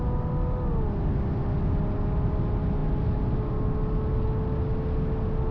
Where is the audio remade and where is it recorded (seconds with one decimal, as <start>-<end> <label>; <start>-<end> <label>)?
0.0-5.5 recorded